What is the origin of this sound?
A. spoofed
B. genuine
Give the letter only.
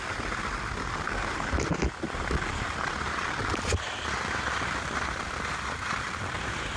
B